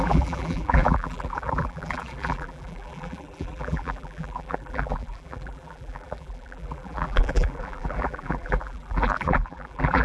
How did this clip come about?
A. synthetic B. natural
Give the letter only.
A